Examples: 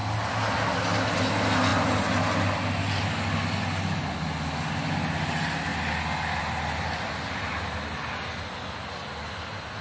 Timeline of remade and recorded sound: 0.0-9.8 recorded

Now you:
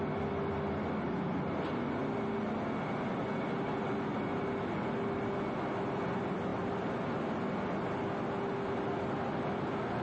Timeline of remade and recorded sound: 0.0-10.0 recorded

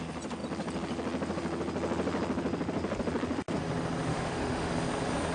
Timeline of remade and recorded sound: 0.0-4.1 recorded; 4.1-4.7 remade; 4.7-5.3 recorded